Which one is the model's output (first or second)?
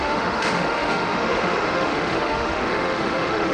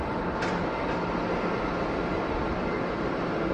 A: first